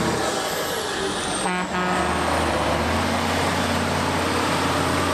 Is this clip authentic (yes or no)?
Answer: yes